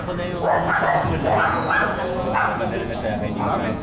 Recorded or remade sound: remade